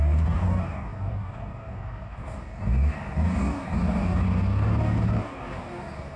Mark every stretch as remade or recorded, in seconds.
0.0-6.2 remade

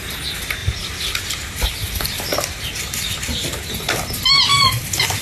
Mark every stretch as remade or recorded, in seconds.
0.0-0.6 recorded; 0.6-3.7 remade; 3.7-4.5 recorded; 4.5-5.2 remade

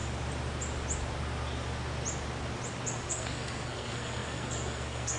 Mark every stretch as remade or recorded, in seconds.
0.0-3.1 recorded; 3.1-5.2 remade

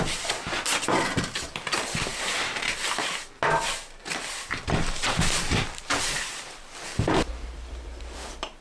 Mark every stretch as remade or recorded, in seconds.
0.0-4.0 recorded; 4.0-6.6 remade; 6.6-8.6 recorded